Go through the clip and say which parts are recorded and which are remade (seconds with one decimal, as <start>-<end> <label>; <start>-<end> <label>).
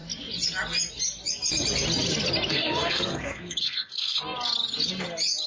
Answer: 0.0-2.5 recorded; 2.5-4.2 remade; 4.2-5.5 recorded